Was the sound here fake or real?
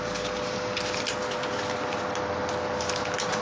real